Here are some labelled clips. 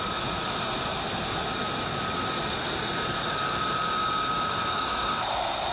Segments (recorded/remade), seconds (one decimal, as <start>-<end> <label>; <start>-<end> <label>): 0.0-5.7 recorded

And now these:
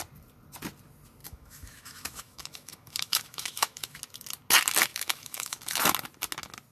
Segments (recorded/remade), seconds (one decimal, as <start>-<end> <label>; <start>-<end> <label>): 0.0-1.2 recorded; 1.2-4.0 remade; 4.0-4.9 recorded; 4.9-5.8 remade; 5.8-6.7 recorded

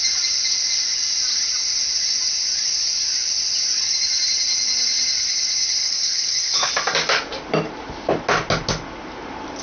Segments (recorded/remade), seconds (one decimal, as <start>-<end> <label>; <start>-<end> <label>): 0.0-5.8 recorded; 5.8-6.7 remade; 6.7-9.6 recorded

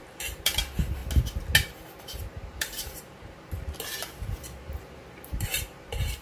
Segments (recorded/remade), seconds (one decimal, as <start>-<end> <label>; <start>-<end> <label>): 0.0-1.0 remade; 1.0-2.0 recorded; 2.0-6.2 remade

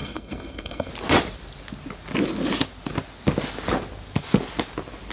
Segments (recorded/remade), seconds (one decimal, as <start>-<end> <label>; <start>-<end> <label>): 0.0-0.9 remade; 0.9-5.1 recorded